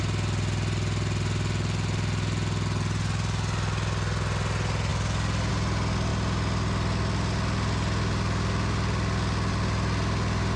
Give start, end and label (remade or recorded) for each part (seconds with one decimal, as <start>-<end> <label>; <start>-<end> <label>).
0.0-10.6 recorded